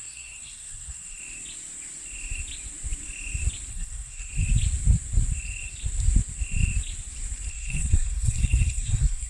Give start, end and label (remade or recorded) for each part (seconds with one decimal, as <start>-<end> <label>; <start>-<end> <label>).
0.0-1.2 remade; 1.2-3.7 recorded; 3.7-4.3 remade; 4.3-7.5 recorded; 7.5-9.3 remade